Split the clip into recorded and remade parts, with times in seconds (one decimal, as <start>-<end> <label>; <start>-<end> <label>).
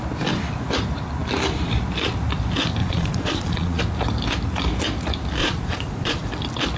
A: 0.0-2.8 recorded; 2.8-3.8 remade; 3.8-5.4 recorded; 5.4-6.3 remade; 6.3-6.8 recorded